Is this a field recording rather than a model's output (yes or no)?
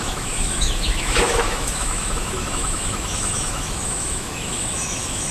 no